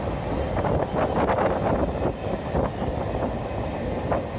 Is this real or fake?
real